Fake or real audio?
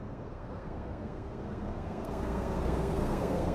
fake